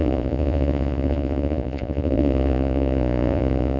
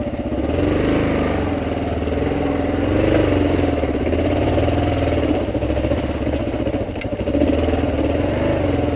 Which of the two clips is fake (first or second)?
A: first